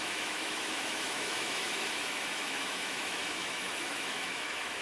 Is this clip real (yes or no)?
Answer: no